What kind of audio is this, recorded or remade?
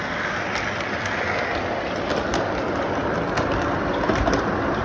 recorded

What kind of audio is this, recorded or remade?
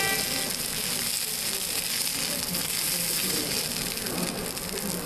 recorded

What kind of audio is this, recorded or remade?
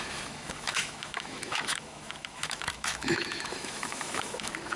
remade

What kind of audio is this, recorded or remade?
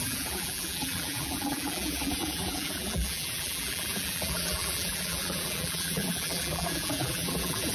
remade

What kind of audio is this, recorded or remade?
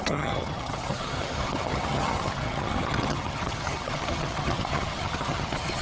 remade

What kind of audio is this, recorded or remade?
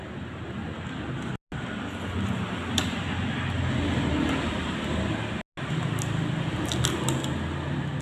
recorded